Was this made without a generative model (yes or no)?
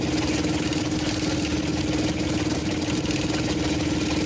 yes